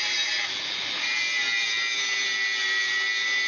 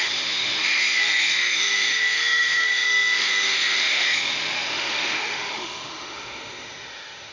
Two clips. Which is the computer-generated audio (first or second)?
second